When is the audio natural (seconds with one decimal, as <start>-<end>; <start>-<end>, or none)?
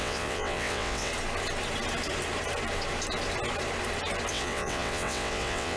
1.1-4.3